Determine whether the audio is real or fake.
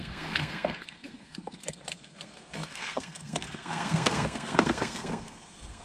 fake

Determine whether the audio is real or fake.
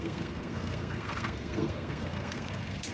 fake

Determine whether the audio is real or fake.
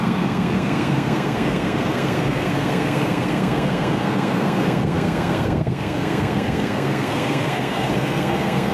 fake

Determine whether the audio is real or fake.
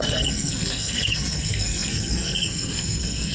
fake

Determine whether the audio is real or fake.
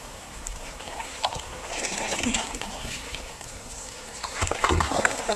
fake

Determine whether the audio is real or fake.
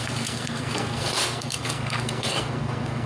fake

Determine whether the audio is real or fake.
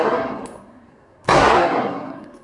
fake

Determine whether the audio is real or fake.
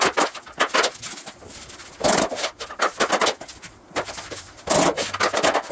real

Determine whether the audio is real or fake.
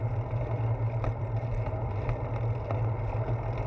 real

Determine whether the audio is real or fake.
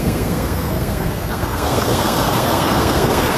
fake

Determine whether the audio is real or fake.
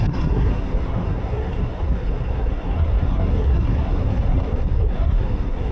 fake